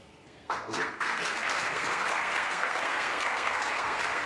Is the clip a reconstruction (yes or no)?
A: yes